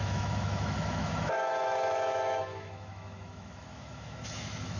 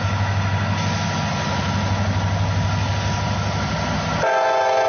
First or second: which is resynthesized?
first